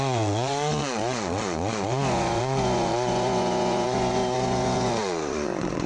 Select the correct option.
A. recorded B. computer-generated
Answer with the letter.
B